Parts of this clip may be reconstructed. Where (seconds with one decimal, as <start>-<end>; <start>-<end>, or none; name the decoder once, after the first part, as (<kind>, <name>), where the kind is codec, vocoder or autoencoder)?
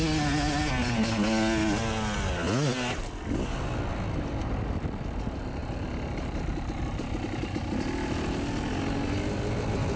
none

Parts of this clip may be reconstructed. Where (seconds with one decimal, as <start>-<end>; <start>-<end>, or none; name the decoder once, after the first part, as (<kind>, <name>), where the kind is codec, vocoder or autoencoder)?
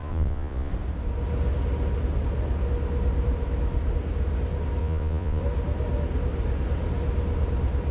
0.0-0.7 (vocoder, Vocos); 4.8-5.4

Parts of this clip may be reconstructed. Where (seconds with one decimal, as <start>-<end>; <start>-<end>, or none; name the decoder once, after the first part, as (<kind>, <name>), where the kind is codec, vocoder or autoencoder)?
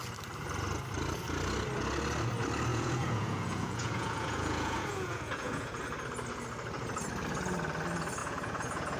2.7-5.8 (vocoder, Vocos); 8.2-9.0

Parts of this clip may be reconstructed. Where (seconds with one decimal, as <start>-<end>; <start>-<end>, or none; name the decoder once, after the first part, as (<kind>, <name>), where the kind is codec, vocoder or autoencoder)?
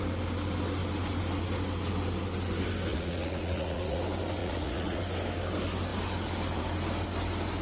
2.9-4.0 (vocoder, Vocos); 4.4-5.0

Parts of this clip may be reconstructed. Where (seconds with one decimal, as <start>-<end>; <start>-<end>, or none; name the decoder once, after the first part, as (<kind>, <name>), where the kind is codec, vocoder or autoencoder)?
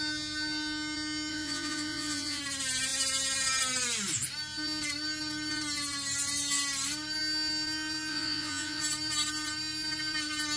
1.3-2.4 (vocoder, Vocos); 8.1-8.8